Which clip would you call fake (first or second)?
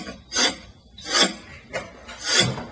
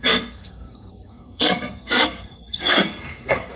second